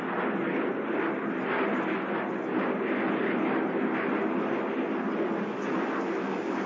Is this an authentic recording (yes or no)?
yes